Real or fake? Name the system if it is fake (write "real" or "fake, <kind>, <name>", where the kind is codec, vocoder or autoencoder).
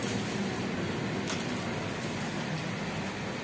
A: real